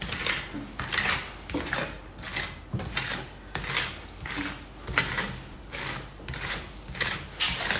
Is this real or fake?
real